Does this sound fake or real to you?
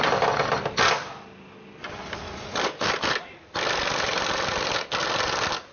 real